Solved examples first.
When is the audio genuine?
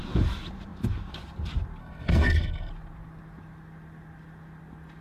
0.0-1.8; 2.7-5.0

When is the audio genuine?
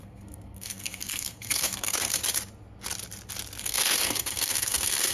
2.2-3.6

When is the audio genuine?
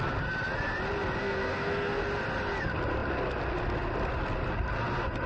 0.0-1.2; 2.0-5.3